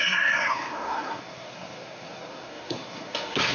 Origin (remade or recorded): remade